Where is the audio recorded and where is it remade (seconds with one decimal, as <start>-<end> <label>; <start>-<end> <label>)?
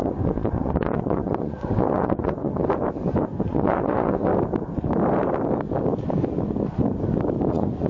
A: 0.0-2.6 remade; 2.6-3.4 recorded; 3.4-4.3 remade; 4.3-7.5 recorded; 7.5-7.9 remade